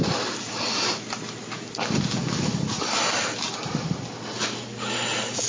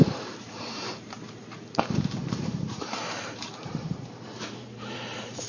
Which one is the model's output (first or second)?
second